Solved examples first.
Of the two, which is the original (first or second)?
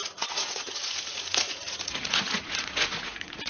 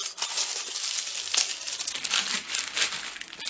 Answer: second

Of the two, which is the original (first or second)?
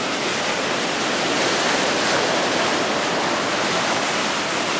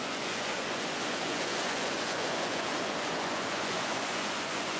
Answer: first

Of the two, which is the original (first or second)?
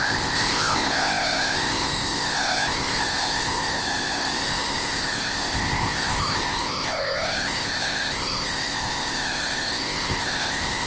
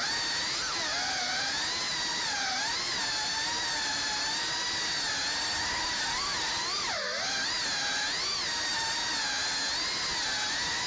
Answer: second